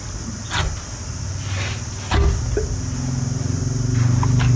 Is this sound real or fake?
real